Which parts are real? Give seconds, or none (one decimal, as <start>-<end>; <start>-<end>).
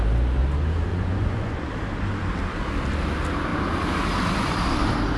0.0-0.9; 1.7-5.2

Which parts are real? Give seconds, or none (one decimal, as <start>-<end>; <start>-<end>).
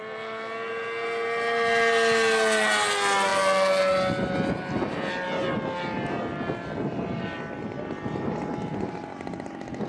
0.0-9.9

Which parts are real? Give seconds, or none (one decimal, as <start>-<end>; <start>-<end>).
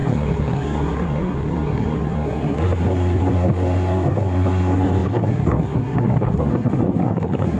none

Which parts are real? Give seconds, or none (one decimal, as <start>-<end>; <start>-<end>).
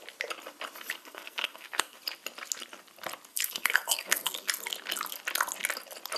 0.0-1.0; 2.0-3.3; 4.5-6.2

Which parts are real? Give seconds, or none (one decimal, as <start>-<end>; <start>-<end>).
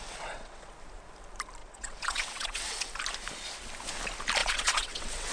0.7-1.6; 2.9-4.4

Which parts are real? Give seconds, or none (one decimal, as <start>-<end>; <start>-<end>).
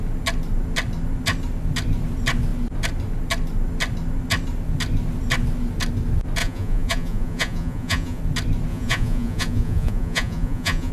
0.0-6.4; 8.2-8.7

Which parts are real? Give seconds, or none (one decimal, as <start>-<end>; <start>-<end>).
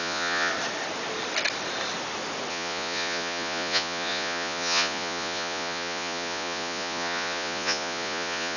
0.5-2.5